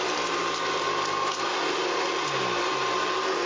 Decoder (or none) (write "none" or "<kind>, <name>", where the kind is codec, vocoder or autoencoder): none